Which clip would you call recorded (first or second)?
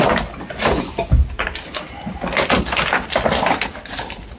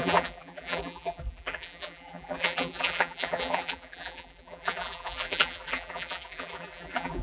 first